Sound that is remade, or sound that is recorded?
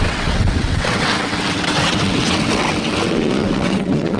remade